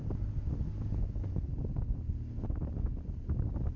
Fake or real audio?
real